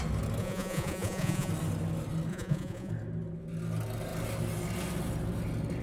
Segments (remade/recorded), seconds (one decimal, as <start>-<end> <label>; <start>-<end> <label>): 0.0-0.4 recorded; 0.4-1.5 remade; 1.5-2.3 recorded; 2.3-2.9 remade; 2.9-5.8 recorded